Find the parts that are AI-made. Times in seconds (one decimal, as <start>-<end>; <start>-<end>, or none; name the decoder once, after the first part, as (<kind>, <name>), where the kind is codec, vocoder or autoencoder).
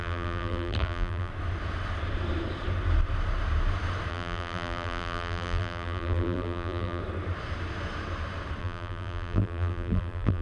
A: 0.0-1.3 (vocoder, BigVGAN v2); 4.1-7.0; 8.6-10.4